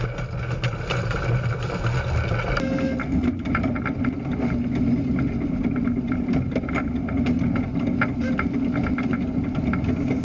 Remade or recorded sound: recorded